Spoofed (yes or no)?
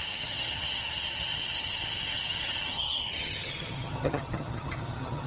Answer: yes